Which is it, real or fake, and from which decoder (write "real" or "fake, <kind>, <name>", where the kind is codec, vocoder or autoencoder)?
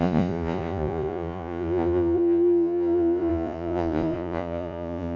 fake, vocoder, Vocos